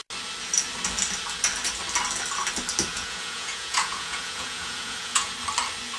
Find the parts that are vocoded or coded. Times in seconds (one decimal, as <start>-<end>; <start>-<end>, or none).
2.9-5.3